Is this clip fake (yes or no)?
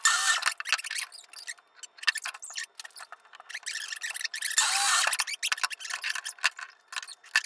no